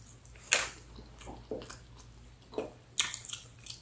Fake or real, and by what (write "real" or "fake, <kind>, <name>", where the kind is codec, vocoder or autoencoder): real